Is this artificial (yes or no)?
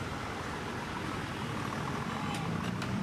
yes